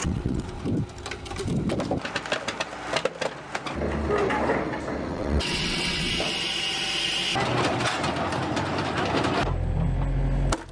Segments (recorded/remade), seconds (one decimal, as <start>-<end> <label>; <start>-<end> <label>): 0.0-0.6 remade; 0.6-5.1 recorded; 5.1-6.1 remade; 6.1-10.7 recorded